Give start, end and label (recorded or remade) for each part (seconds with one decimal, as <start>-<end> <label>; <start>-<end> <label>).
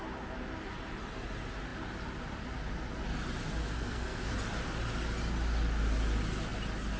0.0-3.6 recorded; 3.6-4.3 remade; 4.3-7.0 recorded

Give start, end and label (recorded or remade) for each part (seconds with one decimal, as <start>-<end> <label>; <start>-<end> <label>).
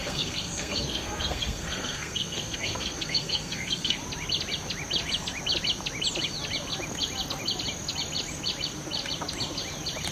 0.0-4.0 remade; 4.0-10.1 recorded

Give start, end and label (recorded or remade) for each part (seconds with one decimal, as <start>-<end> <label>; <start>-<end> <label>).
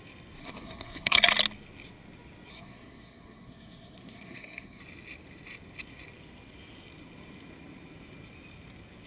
0.0-0.4 recorded; 0.4-1.2 remade; 1.2-2.5 recorded; 2.5-4.8 remade; 4.8-9.1 recorded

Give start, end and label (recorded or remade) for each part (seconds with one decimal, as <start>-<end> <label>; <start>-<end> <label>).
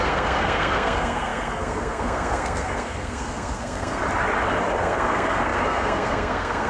0.0-4.0 remade; 4.0-4.8 recorded; 4.8-6.7 remade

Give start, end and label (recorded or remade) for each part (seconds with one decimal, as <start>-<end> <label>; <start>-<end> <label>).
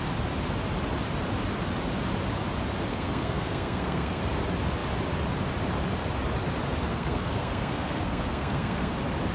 0.0-2.9 recorded; 2.9-4.2 remade; 4.2-6.9 recorded; 6.9-8.9 remade; 8.9-9.3 recorded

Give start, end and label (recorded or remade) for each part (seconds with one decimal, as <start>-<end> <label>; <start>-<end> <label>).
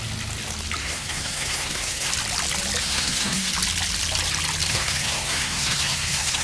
0.0-0.8 recorded; 0.8-2.1 remade; 2.1-2.8 recorded; 2.8-3.5 remade; 3.5-4.7 recorded; 4.7-6.4 remade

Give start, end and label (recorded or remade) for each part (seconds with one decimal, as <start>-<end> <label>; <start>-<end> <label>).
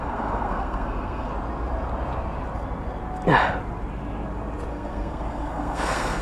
0.0-1.3 remade; 1.3-4.7 recorded; 4.7-6.2 remade